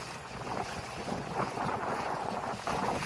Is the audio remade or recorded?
remade